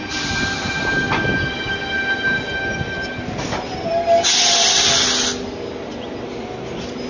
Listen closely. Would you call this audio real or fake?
real